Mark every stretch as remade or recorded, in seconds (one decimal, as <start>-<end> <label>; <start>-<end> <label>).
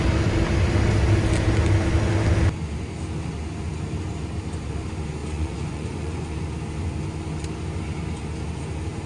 0.0-5.2 recorded; 5.2-6.3 remade; 6.3-9.1 recorded